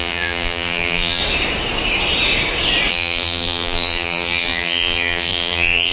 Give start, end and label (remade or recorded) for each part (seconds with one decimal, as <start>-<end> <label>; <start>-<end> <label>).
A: 0.0-1.2 remade; 1.2-2.9 recorded; 2.9-5.9 remade